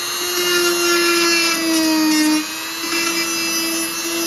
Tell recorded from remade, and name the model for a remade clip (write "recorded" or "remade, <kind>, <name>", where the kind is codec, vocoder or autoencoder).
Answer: recorded